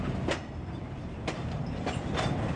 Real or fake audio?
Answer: fake